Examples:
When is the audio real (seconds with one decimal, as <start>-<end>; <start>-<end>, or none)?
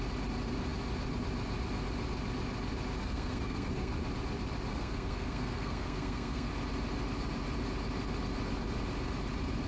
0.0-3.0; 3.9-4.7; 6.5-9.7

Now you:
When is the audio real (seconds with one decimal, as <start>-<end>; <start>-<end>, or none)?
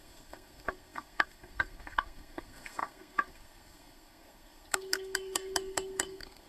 none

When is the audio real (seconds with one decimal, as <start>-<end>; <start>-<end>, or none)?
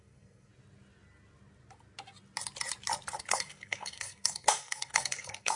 0.5-3.3